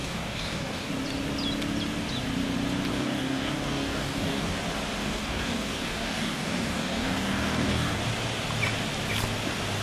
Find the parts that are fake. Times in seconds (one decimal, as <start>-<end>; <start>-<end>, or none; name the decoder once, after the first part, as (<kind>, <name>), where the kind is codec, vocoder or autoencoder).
0.0-0.9 (codec, DAC); 2.9-4.6; 5.0-8.0